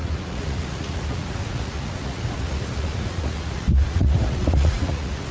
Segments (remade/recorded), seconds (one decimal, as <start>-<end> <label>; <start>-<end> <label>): 0.0-5.3 remade